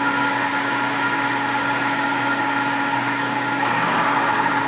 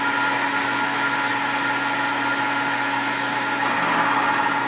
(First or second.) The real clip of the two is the second